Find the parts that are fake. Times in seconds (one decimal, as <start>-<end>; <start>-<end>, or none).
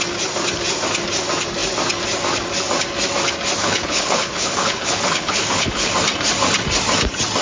3.6-5.9